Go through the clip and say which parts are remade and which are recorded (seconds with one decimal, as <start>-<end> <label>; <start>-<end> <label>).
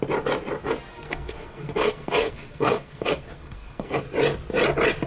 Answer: 0.0-0.9 recorded; 0.9-4.0 remade; 4.0-5.1 recorded